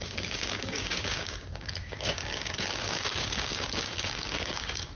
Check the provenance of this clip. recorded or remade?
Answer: remade